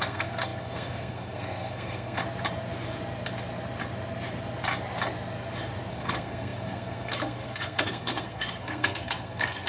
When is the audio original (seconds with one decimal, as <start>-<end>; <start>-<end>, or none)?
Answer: 2.2-5.9